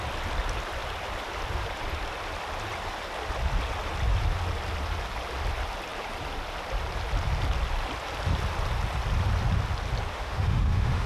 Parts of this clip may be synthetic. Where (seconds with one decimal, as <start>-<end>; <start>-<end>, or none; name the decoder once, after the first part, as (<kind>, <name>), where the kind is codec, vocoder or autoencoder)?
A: 10.1-11.1 (autoencoder, DAC-VAE)